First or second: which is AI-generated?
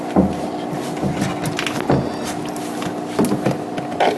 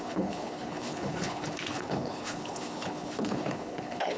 second